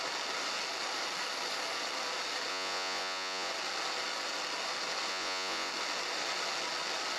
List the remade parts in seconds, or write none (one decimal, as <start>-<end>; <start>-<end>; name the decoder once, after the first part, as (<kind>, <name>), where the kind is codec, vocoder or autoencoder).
2.5-3.5 (vocoder, Vocos); 5.1-5.7